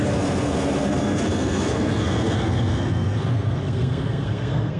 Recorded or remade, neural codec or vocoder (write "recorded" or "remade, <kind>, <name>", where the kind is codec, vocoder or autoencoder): remade, codec, SNAC